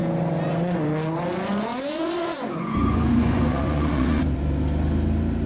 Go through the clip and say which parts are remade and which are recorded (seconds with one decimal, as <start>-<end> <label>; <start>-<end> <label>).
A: 0.0-1.7 recorded; 1.7-4.2 remade; 4.2-5.5 recorded

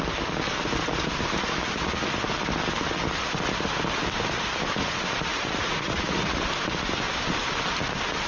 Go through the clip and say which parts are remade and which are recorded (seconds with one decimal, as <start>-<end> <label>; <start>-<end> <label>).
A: 0.0-5.3 recorded; 5.3-6.4 remade; 6.4-8.3 recorded